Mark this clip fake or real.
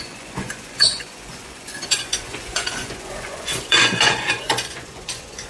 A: fake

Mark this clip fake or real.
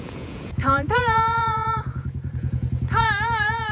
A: fake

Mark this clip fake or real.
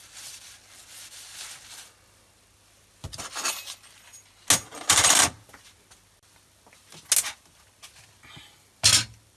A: real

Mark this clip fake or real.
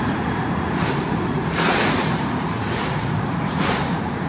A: fake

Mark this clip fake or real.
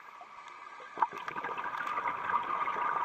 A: real